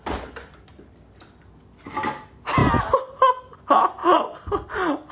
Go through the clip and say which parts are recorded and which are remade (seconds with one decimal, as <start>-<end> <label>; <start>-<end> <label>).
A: 0.0-5.1 recorded